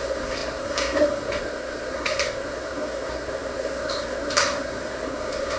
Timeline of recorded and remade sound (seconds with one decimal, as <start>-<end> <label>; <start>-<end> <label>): 0.0-5.6 remade